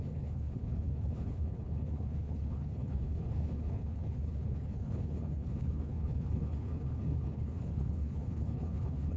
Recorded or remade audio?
remade